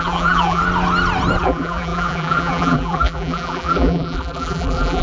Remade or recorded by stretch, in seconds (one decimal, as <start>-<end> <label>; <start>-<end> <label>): 0.0-0.6 remade; 0.6-1.4 recorded; 1.4-5.0 remade